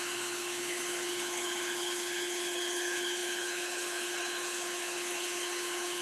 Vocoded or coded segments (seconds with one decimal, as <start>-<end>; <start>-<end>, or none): 0.0-6.0